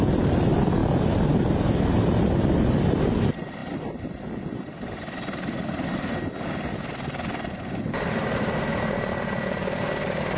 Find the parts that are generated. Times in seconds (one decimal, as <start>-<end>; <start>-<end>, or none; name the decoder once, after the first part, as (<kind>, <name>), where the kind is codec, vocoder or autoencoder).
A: none

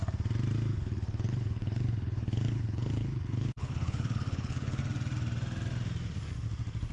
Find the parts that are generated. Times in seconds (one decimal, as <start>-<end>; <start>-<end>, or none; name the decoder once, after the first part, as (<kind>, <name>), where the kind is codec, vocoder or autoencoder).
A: 0.7-4.8 (codec, HILCodec)

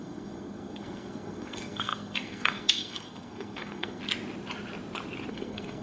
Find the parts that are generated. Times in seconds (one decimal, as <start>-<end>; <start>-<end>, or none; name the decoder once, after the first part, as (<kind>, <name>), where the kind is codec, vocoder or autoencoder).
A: 0.0-4.0 (codec, SNAC); 5.3-5.8

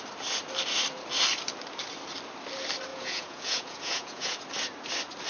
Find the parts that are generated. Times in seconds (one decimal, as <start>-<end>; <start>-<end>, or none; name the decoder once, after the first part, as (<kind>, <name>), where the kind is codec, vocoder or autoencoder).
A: 2.9-4.4 (vocoder, Vocos)

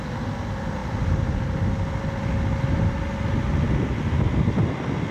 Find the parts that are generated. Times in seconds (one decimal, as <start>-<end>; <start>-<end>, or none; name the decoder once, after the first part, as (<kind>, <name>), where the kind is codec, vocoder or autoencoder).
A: none

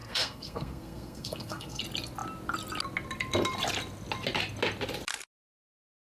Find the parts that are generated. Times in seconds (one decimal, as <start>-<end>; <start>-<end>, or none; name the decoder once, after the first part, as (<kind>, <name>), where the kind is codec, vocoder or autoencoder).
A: 0.0-1.8 (codec, SNAC)

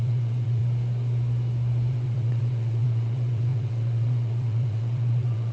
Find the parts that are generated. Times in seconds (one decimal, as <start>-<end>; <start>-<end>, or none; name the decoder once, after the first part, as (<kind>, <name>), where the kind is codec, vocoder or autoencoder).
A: 0.0-0.6 (vocoder, WaveNeXt); 1.9-5.5